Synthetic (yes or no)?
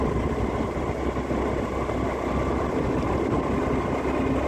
no